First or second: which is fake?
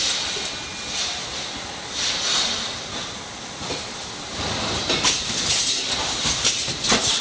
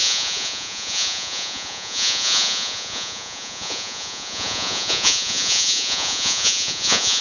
second